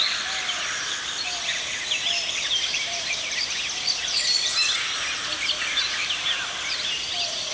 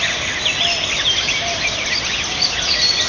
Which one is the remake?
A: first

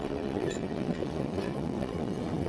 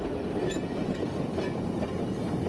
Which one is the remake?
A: first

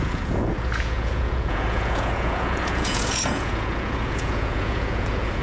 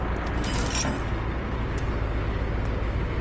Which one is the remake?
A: first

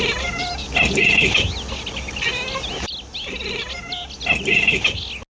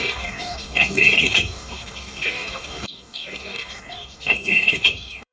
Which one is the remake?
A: second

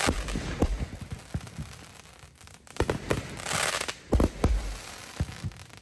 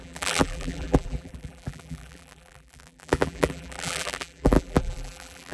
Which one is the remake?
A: second